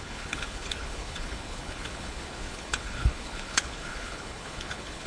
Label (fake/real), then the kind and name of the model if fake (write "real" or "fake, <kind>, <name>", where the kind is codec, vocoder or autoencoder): fake, codec, HILCodec